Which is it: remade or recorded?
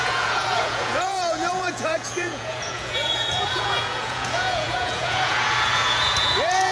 remade